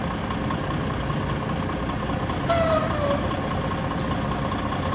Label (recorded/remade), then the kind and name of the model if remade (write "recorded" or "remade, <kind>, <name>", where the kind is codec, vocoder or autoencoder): recorded